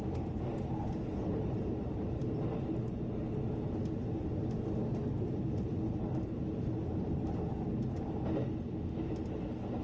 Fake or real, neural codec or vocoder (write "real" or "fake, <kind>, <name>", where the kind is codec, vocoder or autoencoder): real